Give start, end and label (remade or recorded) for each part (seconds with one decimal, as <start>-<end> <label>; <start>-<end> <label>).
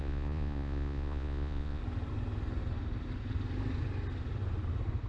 0.0-1.8 remade; 1.8-5.1 recorded